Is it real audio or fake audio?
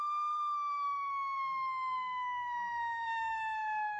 fake